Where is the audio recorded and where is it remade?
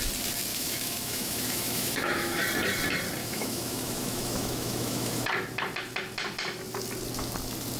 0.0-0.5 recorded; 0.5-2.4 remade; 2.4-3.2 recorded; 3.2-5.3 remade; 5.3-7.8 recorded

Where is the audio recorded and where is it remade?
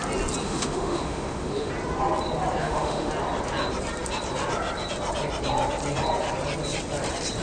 0.0-0.4 recorded; 0.4-1.7 remade; 1.7-2.6 recorded; 2.6-3.1 remade; 3.1-7.4 recorded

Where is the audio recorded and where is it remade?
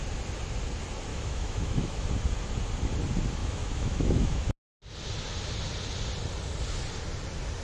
0.0-1.1 recorded; 1.1-2.1 remade; 2.1-3.4 recorded; 3.4-4.5 remade; 4.5-7.6 recorded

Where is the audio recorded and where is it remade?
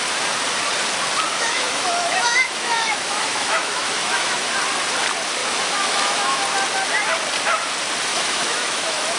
0.0-1.3 recorded; 1.3-4.5 remade; 4.5-5.4 recorded; 5.4-6.4 remade; 6.4-8.1 recorded; 8.1-9.2 remade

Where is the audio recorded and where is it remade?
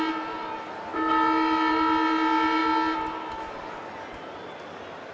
0.0-5.1 recorded